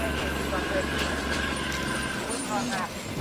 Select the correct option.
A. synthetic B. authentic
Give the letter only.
A